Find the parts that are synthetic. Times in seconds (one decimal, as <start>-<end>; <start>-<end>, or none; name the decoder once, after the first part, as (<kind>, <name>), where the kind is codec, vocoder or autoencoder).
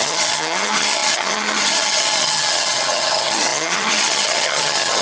0.0-5.0 (vocoder, HiFi-GAN)